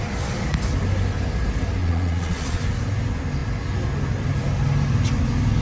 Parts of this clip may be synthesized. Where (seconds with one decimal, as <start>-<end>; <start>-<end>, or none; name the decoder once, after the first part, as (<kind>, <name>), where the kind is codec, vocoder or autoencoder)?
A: 1.8-2.6 (vocoder, Vocos)